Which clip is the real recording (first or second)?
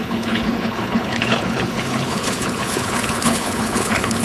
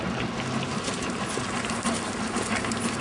second